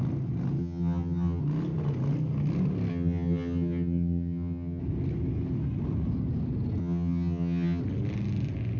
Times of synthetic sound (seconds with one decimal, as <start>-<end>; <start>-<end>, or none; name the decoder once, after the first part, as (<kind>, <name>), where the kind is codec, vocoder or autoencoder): 0.6-1.4 (vocoder, HiFi-GAN); 2.9-4.8; 6.8-7.8